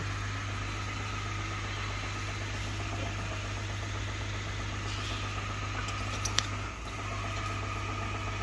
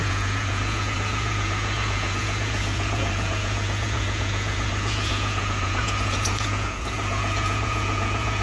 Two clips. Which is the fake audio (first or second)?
second